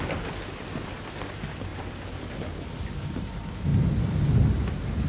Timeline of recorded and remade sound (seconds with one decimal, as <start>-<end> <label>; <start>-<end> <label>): 0.0-5.1 recorded